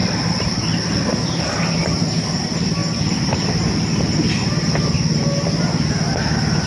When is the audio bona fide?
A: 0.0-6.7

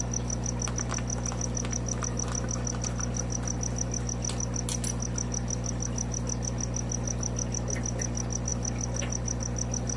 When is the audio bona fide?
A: 0.0-10.0

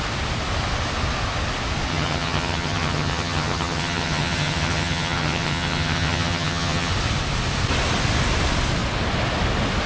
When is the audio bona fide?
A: 0.0-1.9; 6.9-9.9

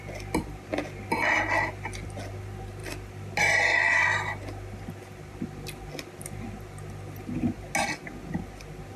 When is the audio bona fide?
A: 0.0-9.0

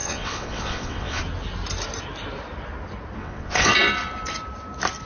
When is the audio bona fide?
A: 1.2-3.2; 3.7-5.1

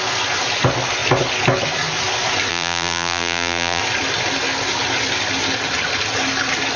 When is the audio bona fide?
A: 0.0-2.5; 3.8-6.8

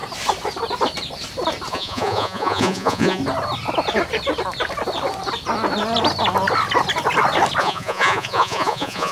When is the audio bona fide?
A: 0.0-1.7; 3.2-7.6

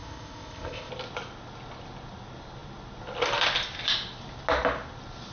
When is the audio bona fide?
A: 0.9-5.3